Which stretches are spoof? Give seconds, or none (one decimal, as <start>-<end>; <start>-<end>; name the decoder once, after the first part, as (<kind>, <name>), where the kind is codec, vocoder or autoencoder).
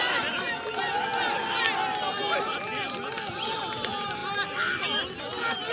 none